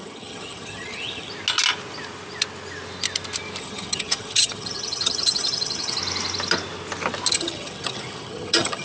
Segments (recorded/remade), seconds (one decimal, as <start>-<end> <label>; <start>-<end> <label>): 0.0-1.3 remade; 1.3-3.6 recorded; 3.6-6.0 remade; 6.0-7.3 recorded; 7.3-8.8 remade

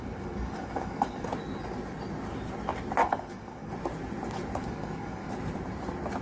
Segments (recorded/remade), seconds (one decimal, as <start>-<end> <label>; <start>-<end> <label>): 0.0-1.3 remade; 1.3-3.0 recorded; 3.0-3.7 remade; 3.7-4.6 recorded; 4.6-5.3 remade; 5.3-6.2 recorded

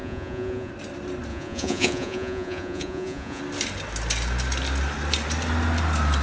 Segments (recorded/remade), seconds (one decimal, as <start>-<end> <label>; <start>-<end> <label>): 0.0-0.7 remade; 0.7-1.3 recorded; 1.3-3.4 remade; 3.4-6.2 recorded

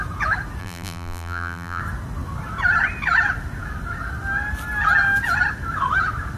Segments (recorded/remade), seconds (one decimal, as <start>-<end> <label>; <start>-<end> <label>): 0.0-0.6 recorded; 0.6-1.8 remade; 1.8-6.4 recorded

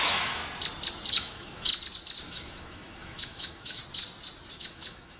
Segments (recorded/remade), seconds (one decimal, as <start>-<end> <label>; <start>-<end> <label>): 0.0-0.4 remade; 0.4-1.1 recorded; 1.1-1.7 remade; 1.7-2.2 recorded; 2.2-3.8 remade; 3.8-4.5 recorded; 4.5-5.2 remade

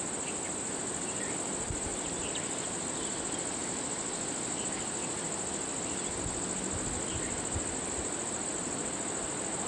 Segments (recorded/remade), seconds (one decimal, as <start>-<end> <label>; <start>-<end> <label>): 0.0-9.7 recorded